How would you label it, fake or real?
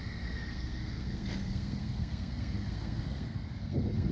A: fake